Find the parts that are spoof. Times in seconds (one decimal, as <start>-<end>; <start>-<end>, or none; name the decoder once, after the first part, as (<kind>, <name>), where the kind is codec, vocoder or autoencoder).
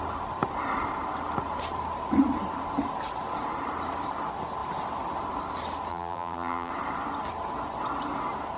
5.9-6.7 (vocoder, BigVGAN v2)